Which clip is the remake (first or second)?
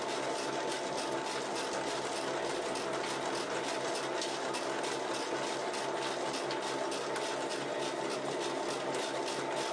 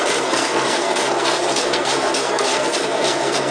second